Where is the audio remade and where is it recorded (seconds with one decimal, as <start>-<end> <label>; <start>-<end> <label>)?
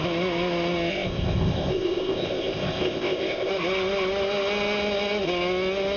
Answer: 0.0-0.9 recorded; 0.9-3.5 remade; 3.5-6.0 recorded